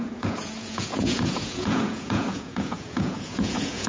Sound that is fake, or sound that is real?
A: fake